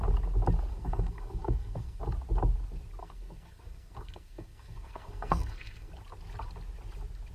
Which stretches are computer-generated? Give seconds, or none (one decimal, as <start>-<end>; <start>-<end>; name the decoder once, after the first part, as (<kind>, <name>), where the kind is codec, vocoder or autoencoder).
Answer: 0.7-2.0 (codec, SNAC); 3.0-5.9